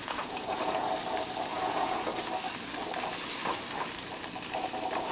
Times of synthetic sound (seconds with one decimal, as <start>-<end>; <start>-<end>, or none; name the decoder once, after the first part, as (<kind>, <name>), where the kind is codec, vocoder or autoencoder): 0.0-0.9 (vocoder, Vocos); 1.5-2.1